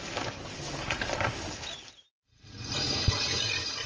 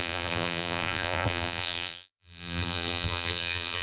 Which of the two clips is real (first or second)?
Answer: first